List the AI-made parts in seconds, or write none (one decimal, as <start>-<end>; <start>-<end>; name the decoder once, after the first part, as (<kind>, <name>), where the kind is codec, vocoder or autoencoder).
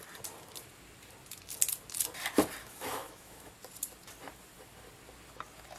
2.6-3.5 (autoencoder, DAC-VAE)